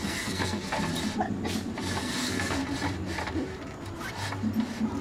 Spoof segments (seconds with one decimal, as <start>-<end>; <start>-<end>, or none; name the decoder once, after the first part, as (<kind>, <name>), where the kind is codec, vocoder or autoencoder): 0.0-0.7 (codec, SNAC); 2.0-2.6